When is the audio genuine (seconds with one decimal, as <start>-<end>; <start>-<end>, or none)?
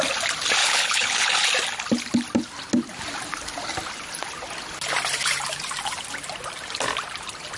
0.0-0.6; 1.5-7.6